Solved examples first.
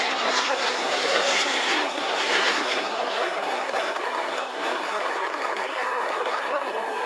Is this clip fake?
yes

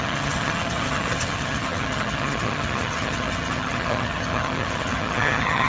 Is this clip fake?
yes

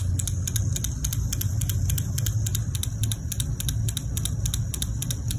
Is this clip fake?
no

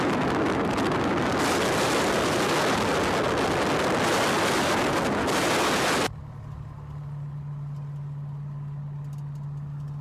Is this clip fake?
no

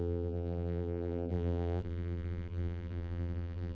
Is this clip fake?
yes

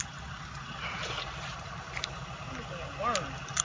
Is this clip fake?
no